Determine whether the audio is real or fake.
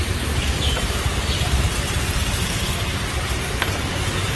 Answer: fake